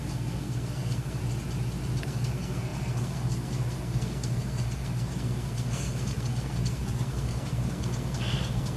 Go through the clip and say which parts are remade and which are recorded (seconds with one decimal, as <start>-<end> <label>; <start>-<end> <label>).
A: 0.0-1.2 remade; 1.2-2.0 recorded; 2.0-8.8 remade